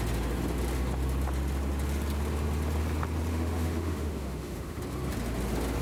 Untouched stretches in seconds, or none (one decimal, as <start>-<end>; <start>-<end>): 0.0-3.3; 4.8-5.8